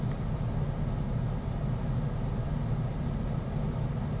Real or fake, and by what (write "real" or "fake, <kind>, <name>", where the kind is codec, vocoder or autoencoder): real